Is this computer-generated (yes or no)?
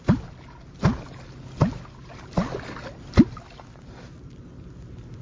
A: no